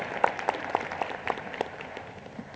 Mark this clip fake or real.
real